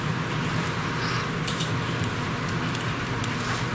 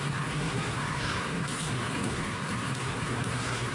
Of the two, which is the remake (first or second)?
second